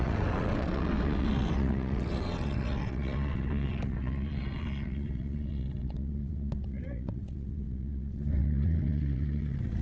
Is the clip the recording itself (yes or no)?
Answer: no